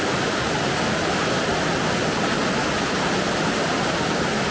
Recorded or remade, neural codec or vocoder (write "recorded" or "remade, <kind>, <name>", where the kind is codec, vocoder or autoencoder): recorded